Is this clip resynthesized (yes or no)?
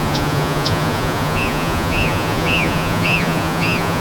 yes